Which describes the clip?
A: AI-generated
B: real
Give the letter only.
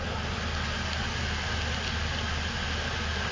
B